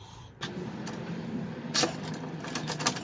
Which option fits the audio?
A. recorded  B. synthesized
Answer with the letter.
A